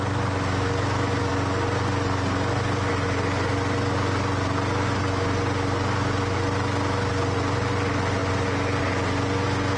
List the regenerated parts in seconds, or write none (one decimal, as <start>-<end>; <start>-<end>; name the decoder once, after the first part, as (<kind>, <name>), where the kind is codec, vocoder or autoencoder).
none